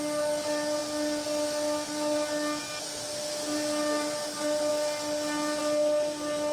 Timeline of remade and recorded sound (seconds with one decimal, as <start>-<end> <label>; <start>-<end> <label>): 0.0-6.5 recorded